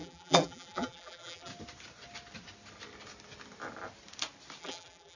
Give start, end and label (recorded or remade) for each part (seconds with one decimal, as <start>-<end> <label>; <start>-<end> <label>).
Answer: 0.0-1.5 remade; 1.5-4.6 recorded; 4.6-5.2 remade